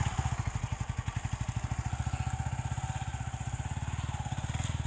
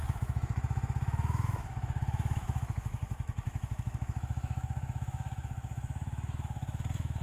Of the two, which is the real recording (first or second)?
first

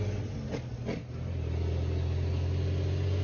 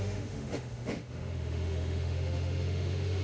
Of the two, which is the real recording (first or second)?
first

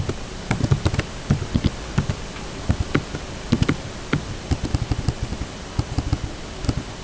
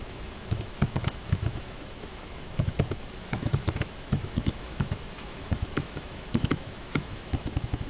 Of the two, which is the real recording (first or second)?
first